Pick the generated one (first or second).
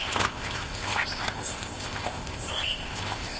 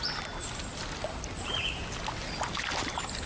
first